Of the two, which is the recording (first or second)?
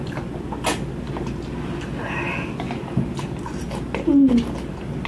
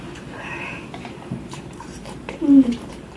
first